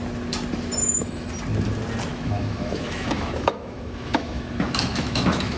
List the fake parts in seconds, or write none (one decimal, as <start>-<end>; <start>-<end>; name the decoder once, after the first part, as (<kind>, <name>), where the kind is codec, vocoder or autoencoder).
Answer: 0.8-1.3 (autoencoder, DAC-VAE); 2.1-5.6